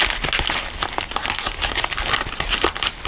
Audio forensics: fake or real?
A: real